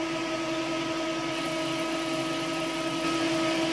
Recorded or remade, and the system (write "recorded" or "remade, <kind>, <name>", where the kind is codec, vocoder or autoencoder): recorded